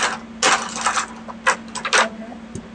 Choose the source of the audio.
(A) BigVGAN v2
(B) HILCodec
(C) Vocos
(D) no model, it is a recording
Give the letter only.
D